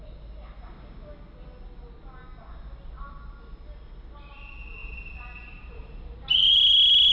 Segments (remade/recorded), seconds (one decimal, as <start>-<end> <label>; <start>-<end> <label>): 0.0-4.8 recorded; 4.8-6.4 remade; 6.4-7.1 recorded